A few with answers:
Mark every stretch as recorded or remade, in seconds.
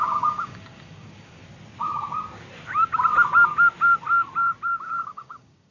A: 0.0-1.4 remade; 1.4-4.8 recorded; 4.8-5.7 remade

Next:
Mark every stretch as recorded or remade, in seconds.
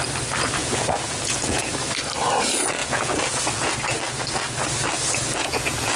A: 0.0-0.6 recorded; 0.6-1.7 remade; 1.7-2.8 recorded; 2.8-3.7 remade; 3.7-5.4 recorded; 5.4-6.0 remade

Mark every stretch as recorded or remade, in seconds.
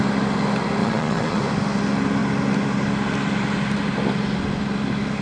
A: 0.0-0.8 recorded; 0.8-1.4 remade; 1.4-5.2 recorded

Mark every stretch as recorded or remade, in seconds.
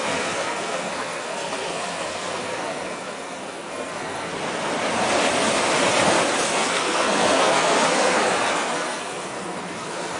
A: 0.0-4.3 remade; 4.3-6.5 recorded; 6.5-10.2 remade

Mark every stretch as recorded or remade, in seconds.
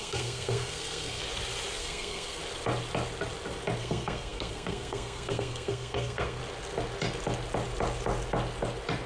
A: 0.0-1.2 remade; 1.2-1.8 recorded; 1.8-2.4 remade; 2.4-3.8 recorded; 3.8-6.4 remade; 6.4-9.1 recorded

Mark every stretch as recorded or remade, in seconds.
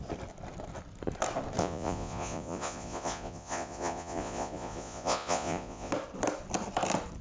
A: 0.0-1.6 recorded; 1.6-5.9 remade; 5.9-7.2 recorded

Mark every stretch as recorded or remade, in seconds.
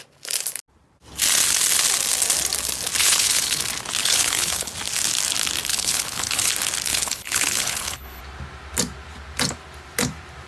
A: 0.0-3.0 recorded; 3.0-3.6 remade; 3.6-4.0 recorded; 4.0-4.7 remade; 4.7-5.7 recorded; 5.7-6.5 remade; 6.5-6.9 recorded; 6.9-8.2 remade; 8.2-10.5 recorded